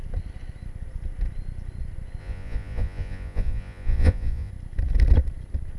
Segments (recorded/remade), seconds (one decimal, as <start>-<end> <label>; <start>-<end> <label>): 0.0-2.2 recorded; 2.2-4.5 remade; 4.5-5.8 recorded